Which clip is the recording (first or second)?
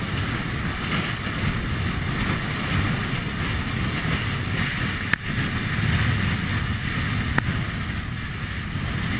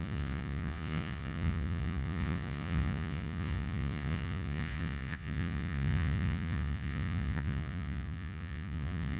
first